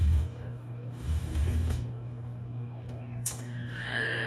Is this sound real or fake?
fake